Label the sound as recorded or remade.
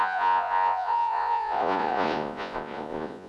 remade